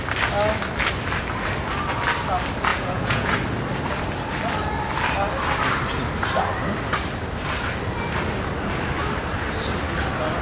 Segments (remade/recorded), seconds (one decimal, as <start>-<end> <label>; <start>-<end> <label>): 0.0-2.7 recorded; 2.7-3.3 remade; 3.3-10.4 recorded